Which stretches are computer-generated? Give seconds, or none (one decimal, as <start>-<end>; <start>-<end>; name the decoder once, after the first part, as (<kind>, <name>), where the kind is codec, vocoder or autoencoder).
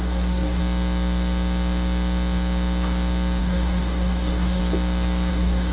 0.0-0.6 (codec, DAC); 3.4-4.6; 5.3-5.7